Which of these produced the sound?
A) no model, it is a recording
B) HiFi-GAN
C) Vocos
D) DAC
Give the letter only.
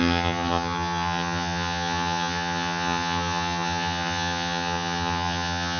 B